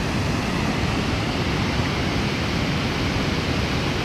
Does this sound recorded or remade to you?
recorded